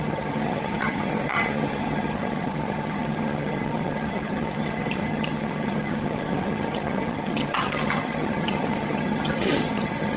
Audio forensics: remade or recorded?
remade